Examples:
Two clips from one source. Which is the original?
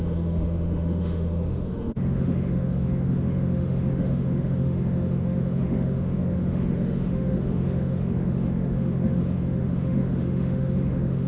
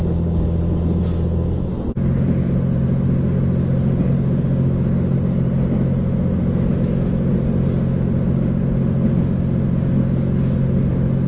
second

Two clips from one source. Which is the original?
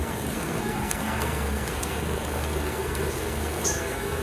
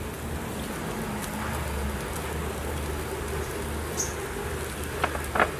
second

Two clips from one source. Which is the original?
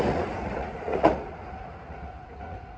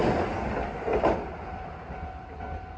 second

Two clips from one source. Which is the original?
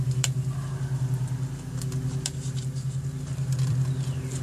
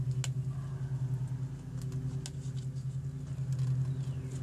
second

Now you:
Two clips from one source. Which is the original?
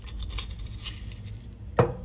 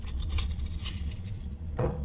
first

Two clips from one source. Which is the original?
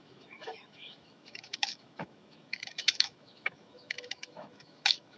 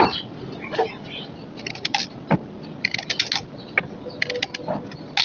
second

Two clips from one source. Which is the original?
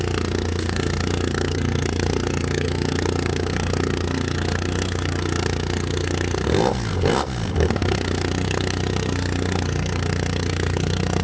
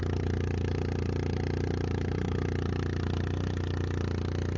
second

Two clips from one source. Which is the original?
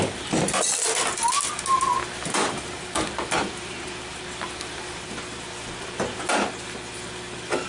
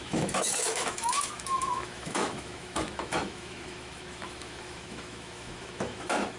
first